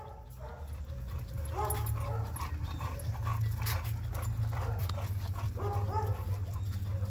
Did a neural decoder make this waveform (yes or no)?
no